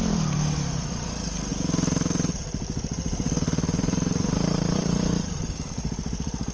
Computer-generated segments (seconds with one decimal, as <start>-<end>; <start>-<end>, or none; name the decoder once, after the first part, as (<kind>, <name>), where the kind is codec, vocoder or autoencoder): 1.5-5.4 (vocoder, BigVGAN v2)